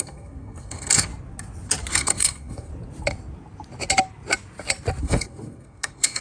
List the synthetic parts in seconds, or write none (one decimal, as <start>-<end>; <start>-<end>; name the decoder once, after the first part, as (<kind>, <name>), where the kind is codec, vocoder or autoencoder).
0.0-1.1 (codec, SNAC); 1.9-2.7; 5.0-6.2